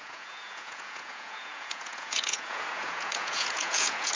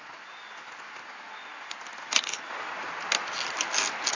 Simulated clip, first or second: first